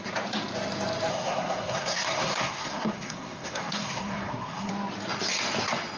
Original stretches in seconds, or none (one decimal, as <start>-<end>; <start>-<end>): 0.0-1.1; 4.7-6.0